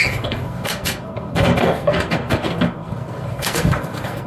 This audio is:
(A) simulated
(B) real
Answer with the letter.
A